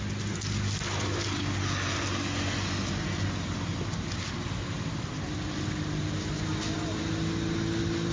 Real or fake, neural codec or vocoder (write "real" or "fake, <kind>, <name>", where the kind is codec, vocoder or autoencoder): real